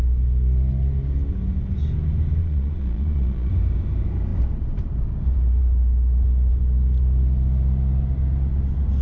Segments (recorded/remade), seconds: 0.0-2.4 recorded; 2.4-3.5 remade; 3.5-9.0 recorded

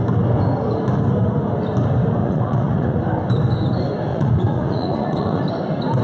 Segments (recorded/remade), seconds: 0.0-2.2 recorded; 2.2-3.0 remade; 3.0-4.1 recorded; 4.1-5.4 remade; 5.4-6.0 recorded